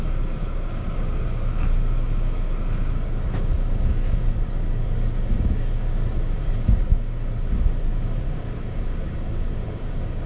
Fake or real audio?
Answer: fake